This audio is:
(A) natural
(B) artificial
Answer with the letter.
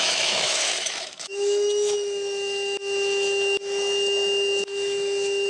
B